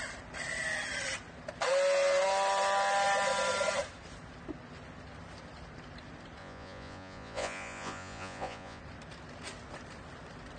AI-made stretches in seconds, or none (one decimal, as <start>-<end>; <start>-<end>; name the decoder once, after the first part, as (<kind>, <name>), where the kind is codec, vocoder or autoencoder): 6.4-8.8 (vocoder, Vocos)